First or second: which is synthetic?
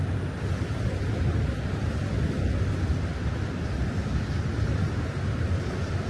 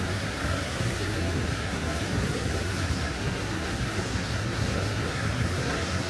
second